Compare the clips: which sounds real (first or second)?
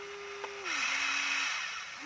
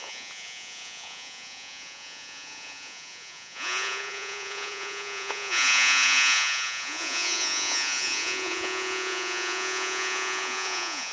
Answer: first